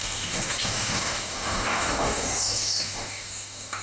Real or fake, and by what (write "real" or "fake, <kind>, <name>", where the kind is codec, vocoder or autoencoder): fake, codec, DAC